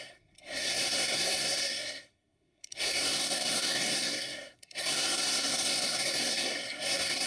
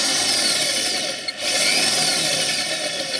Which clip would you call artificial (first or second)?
first